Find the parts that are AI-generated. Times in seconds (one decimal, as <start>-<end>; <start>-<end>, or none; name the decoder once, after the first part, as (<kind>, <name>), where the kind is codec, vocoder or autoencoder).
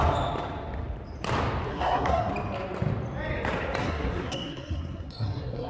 1.7-2.3 (codec, SNAC); 3.8-5.7